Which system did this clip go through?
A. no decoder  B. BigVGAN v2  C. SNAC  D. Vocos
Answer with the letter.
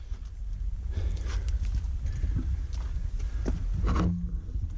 A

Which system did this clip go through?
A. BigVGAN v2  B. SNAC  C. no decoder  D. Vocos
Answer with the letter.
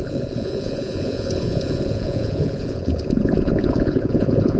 D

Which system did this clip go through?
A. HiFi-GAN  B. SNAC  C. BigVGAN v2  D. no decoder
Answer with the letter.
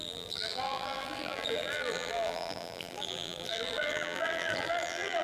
C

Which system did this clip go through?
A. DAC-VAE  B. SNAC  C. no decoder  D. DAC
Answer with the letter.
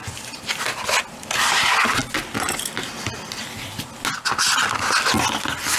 C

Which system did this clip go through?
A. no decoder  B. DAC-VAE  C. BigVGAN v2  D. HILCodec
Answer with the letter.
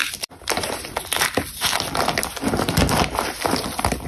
A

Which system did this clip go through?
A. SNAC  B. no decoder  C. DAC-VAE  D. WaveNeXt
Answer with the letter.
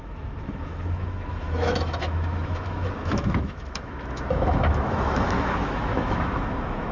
C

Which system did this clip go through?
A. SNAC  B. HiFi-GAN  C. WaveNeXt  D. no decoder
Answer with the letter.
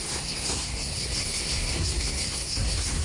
A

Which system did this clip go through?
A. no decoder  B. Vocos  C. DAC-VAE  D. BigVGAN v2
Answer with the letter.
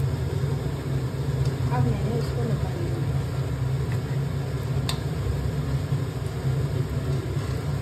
A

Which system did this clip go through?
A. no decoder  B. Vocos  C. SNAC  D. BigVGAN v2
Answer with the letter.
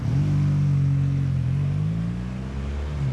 A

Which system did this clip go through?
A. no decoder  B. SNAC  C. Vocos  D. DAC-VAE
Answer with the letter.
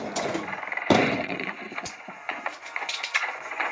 C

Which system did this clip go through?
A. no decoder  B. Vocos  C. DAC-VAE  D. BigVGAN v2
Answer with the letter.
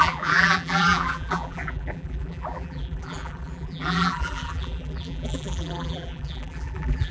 D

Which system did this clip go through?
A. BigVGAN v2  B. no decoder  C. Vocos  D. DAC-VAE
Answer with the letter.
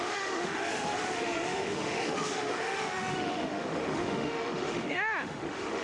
D